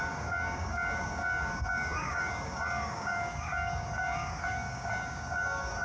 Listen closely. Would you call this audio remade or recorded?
remade